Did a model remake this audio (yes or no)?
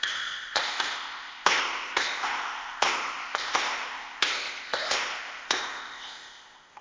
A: yes